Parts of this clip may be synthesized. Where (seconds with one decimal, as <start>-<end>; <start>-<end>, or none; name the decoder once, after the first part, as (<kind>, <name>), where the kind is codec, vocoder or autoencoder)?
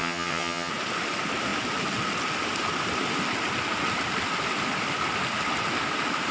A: 0.0-0.7 (vocoder, HiFi-GAN)